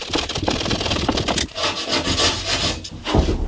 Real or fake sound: real